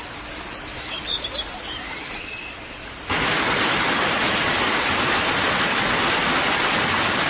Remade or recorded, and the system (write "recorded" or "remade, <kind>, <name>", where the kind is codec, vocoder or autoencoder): recorded